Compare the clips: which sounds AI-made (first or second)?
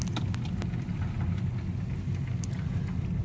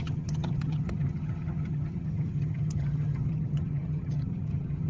second